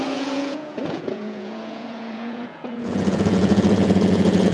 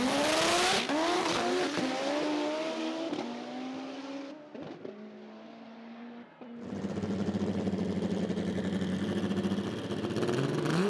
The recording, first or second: second